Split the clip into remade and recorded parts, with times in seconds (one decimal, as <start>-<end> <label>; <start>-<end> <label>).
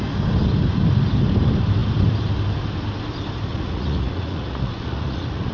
0.0-3.5 recorded; 3.5-5.5 remade